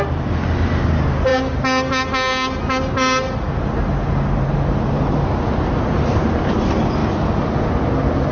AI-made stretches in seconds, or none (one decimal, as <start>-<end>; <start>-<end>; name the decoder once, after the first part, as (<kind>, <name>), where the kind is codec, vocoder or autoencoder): none